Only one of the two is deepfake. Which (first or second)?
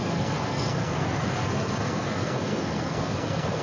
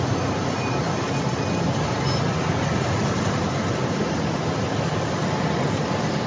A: first